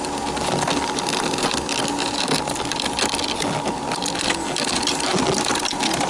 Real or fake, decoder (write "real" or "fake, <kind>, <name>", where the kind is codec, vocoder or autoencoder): real